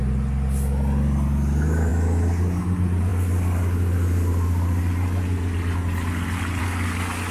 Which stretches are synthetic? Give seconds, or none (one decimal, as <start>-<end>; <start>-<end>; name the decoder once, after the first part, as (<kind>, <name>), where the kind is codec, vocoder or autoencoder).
none